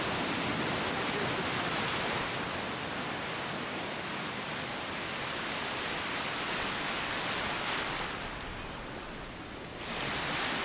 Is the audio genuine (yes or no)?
yes